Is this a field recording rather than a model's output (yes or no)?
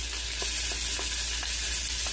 yes